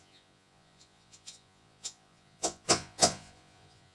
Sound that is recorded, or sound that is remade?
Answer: remade